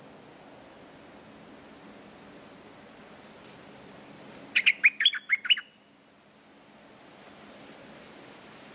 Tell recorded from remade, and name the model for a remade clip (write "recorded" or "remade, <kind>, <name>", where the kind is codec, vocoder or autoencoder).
recorded